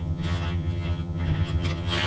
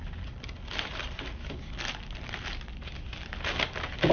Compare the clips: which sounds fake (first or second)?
first